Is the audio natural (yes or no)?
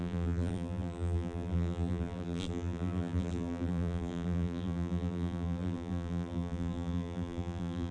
no